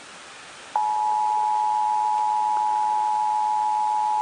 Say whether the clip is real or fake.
real